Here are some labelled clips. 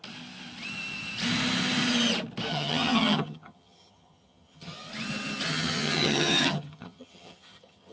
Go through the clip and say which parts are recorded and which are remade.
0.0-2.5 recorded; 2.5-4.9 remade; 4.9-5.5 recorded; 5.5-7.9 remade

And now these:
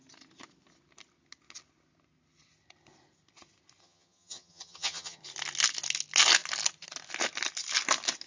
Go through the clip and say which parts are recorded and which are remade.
0.0-3.8 recorded; 3.8-5.2 remade; 5.2-8.3 recorded

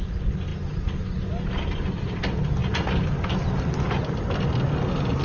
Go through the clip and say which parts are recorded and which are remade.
0.0-5.2 recorded

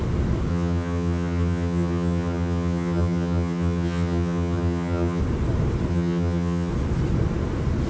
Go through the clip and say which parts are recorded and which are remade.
0.0-0.5 recorded; 0.5-5.2 remade; 5.2-5.9 recorded; 5.9-6.7 remade; 6.7-7.9 recorded

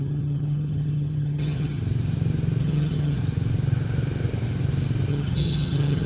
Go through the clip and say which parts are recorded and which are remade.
0.0-1.8 remade; 1.8-2.6 recorded; 2.6-3.2 remade; 3.2-5.1 recorded; 5.1-6.1 remade

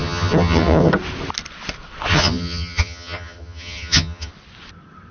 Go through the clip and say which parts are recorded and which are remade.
0.0-0.9 remade; 0.9-2.1 recorded; 2.1-4.3 remade; 4.3-5.1 recorded